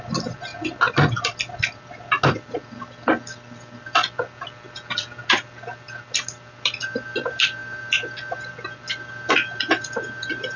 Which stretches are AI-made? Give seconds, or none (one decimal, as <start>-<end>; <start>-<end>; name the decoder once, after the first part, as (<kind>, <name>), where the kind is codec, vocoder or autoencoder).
none